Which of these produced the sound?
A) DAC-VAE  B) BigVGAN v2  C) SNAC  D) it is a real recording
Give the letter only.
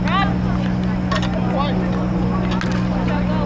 D